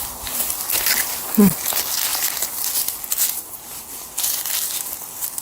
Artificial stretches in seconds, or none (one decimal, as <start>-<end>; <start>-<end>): none